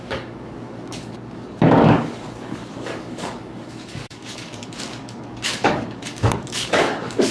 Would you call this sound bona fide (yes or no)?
no